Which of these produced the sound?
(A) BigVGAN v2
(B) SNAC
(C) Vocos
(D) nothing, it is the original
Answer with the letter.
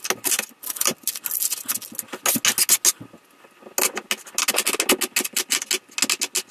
D